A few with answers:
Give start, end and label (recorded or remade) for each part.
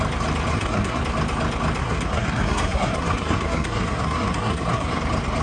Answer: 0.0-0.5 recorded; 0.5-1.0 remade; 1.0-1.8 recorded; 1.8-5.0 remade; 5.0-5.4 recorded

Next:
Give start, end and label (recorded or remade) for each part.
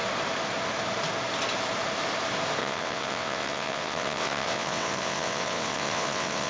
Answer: 0.0-2.6 recorded; 2.6-6.5 remade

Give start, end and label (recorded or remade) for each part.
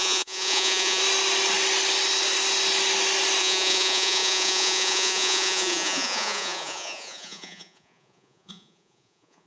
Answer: 0.0-1.0 remade; 1.0-3.4 recorded; 3.4-9.5 remade